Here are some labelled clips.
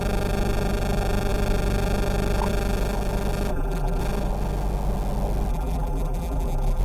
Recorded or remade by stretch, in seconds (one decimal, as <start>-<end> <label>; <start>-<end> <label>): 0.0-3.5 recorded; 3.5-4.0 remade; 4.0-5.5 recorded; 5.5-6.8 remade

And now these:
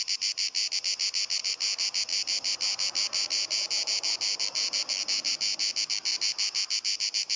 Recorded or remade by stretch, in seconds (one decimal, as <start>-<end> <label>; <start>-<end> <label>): 0.0-7.4 recorded

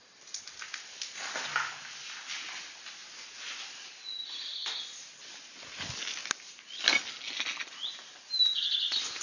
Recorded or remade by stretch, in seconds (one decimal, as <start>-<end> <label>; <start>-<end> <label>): 0.0-9.2 recorded

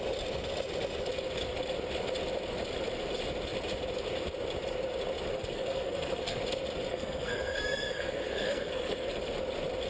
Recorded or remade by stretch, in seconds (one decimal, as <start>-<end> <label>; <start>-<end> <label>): 0.0-5.3 recorded; 5.3-6.4 remade; 6.4-6.9 recorded; 6.9-9.2 remade; 9.2-9.9 recorded